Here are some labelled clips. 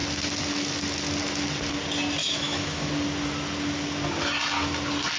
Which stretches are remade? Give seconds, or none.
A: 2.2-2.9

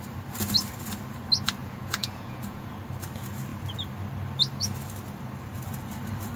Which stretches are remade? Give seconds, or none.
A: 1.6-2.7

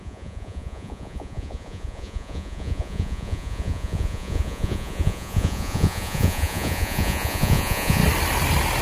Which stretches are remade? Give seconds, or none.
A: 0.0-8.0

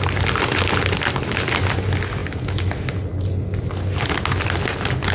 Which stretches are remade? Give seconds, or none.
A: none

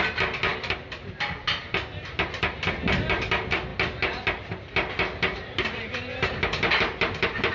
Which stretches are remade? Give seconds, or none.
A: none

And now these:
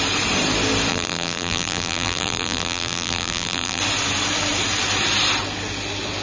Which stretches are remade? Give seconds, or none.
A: 0.9-3.8

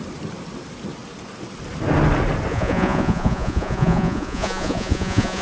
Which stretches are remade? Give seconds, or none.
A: 2.5-5.4